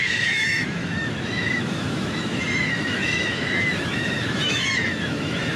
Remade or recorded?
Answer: remade